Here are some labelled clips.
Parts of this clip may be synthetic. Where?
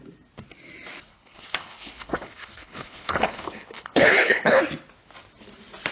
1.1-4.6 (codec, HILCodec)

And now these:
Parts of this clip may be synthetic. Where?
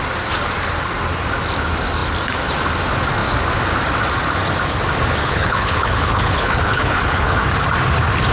5.2-7.4 (codec, HILCodec)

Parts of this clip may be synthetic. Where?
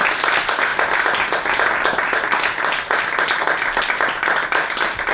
none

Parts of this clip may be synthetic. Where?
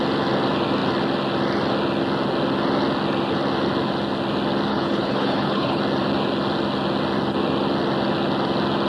4.7-5.8 (codec, HILCodec)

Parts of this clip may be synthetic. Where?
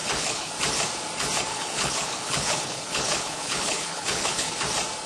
0.0-0.5 (codec, HILCodec); 1.5-4.6